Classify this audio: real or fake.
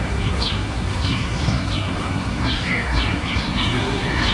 fake